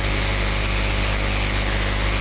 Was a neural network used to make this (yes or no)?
no